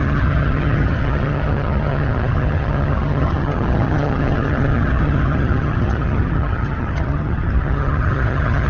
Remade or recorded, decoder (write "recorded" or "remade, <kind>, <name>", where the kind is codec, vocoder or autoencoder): remade, vocoder, HiFi-GAN